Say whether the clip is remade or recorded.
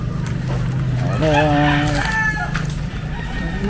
recorded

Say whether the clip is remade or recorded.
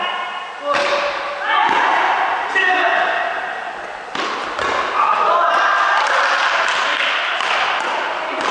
recorded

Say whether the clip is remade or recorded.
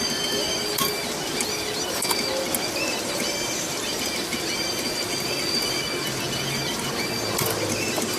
recorded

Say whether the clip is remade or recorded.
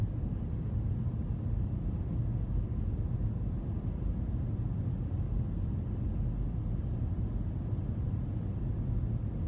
recorded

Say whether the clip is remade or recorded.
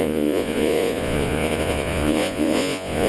remade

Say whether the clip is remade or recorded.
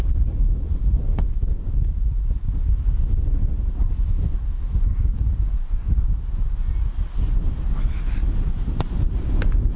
recorded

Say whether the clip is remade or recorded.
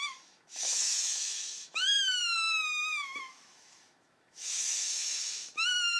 remade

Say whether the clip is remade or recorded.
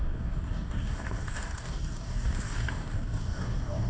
remade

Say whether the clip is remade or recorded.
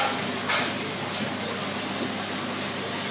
recorded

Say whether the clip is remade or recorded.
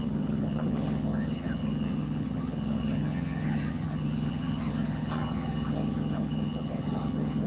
remade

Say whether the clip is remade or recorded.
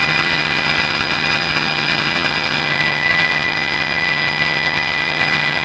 remade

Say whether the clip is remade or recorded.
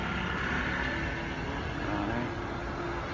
recorded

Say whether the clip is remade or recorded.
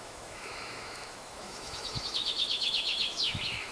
remade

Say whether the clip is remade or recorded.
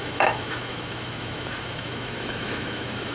remade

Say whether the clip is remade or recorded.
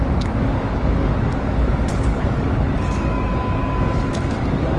remade